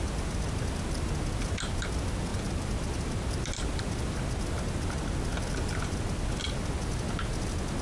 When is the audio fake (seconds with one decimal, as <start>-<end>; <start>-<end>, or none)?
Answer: none